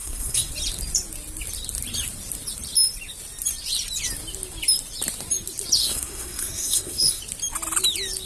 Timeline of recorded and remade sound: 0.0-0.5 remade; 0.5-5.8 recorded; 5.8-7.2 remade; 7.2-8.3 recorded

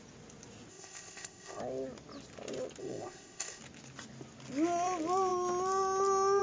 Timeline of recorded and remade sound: 0.0-0.7 recorded; 0.7-1.6 remade; 1.6-2.8 recorded; 2.8-3.6 remade; 3.6-6.4 recorded

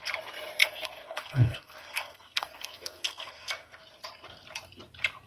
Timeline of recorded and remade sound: 0.0-0.6 recorded; 0.6-3.8 remade; 3.8-5.3 recorded

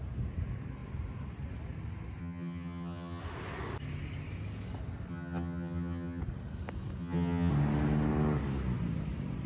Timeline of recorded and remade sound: 0.0-2.2 recorded; 2.2-3.2 remade; 3.2-5.1 recorded; 5.1-6.2 remade; 6.2-7.0 recorded; 7.0-7.5 remade; 7.5-9.5 recorded

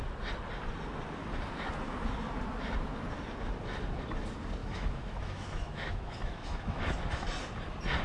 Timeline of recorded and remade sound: 0.0-4.6 recorded; 4.6-6.8 remade; 6.8-8.0 recorded

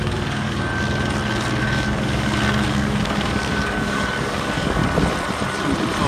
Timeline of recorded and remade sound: 0.0-0.7 remade; 0.7-1.6 recorded; 1.6-4.8 remade; 4.8-6.1 recorded

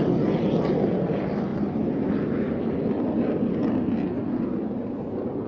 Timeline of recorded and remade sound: 0.0-5.5 recorded